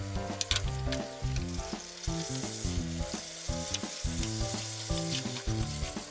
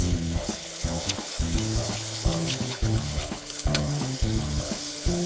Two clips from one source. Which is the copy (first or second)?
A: second